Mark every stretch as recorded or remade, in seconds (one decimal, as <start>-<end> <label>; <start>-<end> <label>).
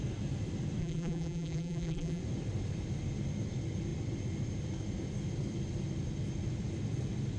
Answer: 0.0-0.8 recorded; 0.8-2.2 remade; 2.2-7.4 recorded